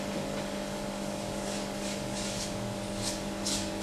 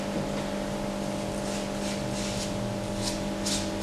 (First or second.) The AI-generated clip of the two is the first